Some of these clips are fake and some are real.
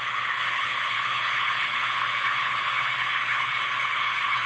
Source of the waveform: fake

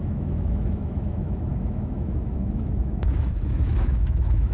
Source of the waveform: fake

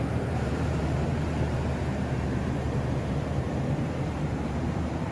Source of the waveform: fake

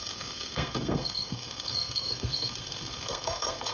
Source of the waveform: fake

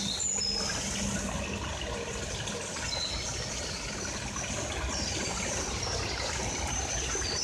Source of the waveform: real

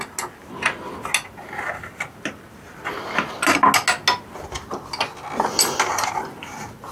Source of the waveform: real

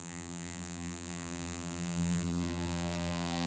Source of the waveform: fake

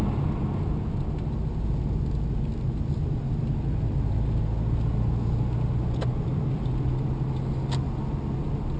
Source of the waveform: real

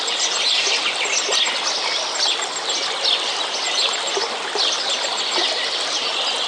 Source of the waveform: real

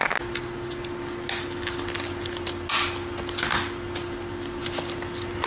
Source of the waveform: real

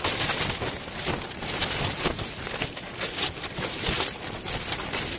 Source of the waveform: real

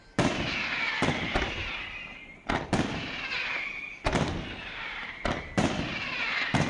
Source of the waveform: real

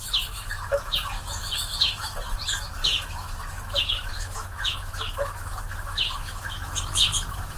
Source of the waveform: fake